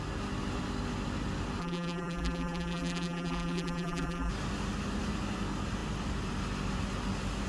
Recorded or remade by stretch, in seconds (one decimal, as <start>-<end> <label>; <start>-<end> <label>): 0.0-1.6 recorded; 1.6-4.3 remade; 4.3-7.5 recorded

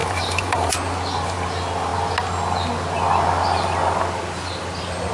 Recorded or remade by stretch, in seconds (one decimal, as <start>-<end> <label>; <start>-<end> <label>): 0.0-0.7 remade; 0.7-5.1 recorded